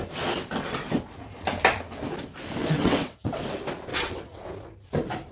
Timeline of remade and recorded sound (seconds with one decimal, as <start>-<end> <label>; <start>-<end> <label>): 0.0-2.6 recorded; 2.6-3.4 remade; 3.4-3.9 recorded; 3.9-4.5 remade; 4.5-5.3 recorded